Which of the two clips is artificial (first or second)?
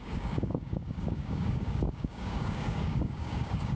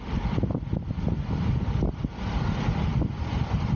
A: first